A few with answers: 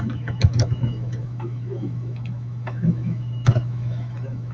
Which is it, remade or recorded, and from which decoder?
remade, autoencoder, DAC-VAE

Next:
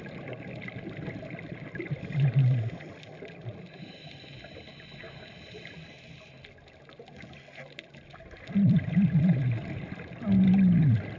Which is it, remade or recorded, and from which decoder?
recorded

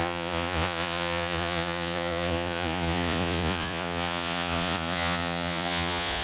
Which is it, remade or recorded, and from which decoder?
remade, vocoder, Vocos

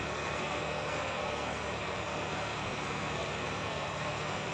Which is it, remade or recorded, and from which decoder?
remade, codec, SNAC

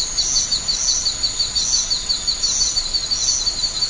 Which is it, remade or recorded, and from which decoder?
recorded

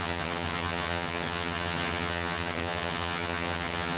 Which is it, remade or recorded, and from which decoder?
remade, vocoder, HiFi-GAN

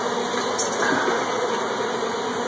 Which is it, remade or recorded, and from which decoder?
recorded